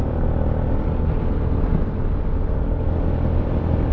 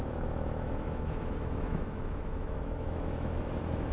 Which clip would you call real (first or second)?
first